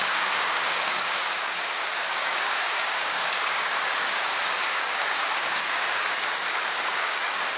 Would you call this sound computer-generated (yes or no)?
yes